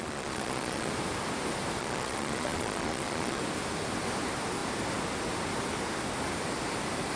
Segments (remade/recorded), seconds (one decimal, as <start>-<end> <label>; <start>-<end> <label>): 0.0-0.9 remade; 0.9-1.8 recorded; 1.8-3.4 remade; 3.4-7.2 recorded